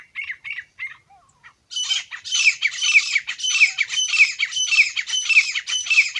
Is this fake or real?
real